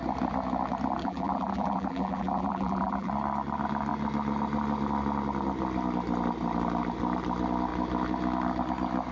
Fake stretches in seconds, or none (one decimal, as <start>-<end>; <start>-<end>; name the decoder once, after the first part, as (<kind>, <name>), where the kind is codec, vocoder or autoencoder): 1.0-3.1 (vocoder, BigVGAN v2)